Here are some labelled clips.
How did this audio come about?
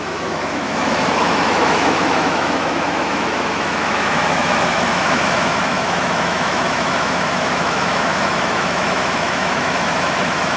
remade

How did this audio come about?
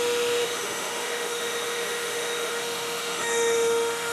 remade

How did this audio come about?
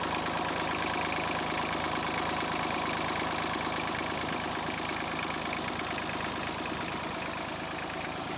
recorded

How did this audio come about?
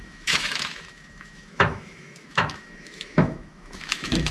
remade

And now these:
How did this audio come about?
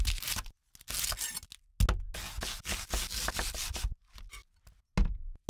recorded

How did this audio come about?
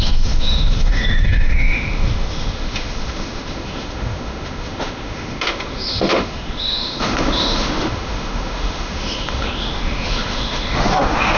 remade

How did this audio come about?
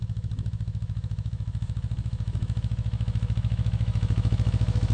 remade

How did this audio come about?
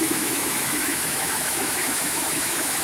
remade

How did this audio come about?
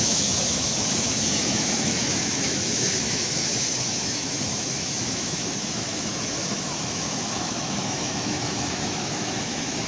remade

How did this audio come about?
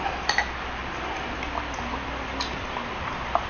recorded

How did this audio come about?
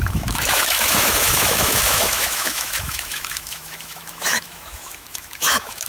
remade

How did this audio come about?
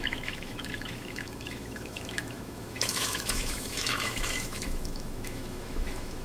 remade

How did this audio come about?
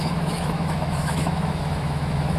remade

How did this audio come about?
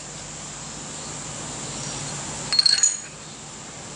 recorded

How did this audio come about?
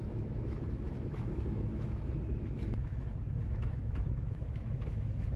remade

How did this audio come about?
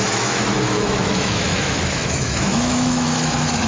remade